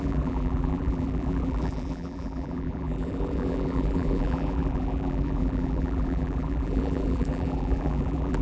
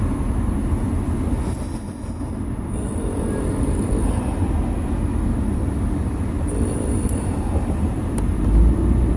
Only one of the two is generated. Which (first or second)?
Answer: first